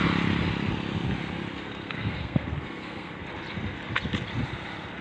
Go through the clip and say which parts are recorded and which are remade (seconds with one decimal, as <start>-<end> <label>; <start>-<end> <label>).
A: 0.0-1.5 recorded; 1.5-3.2 remade; 3.2-5.0 recorded

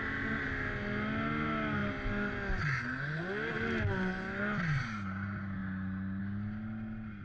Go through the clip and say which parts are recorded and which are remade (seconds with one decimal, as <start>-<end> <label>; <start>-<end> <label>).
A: 0.0-7.2 recorded

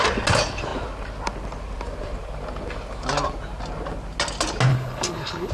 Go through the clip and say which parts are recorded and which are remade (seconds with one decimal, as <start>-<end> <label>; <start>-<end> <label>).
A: 0.0-4.7 recorded; 4.7-5.5 remade

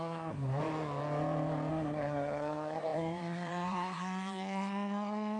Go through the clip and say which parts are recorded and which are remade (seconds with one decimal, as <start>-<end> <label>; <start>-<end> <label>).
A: 0.0-0.6 remade; 0.6-1.7 recorded; 1.7-5.4 remade